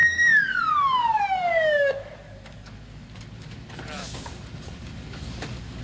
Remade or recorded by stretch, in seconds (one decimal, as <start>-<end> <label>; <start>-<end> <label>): 0.0-3.5 remade; 3.5-4.0 recorded; 4.0-5.8 remade